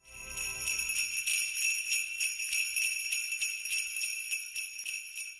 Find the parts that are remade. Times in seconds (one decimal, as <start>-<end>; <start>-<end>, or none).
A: none